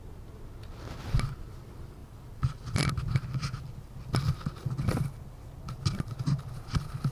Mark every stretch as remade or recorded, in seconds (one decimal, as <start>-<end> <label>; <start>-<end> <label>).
0.0-2.0 recorded; 2.0-2.9 remade; 2.9-7.1 recorded